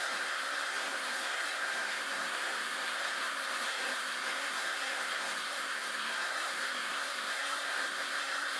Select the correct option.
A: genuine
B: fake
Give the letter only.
B